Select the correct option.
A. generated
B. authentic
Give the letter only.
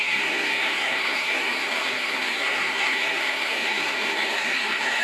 A